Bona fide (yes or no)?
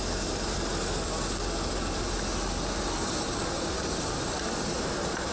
yes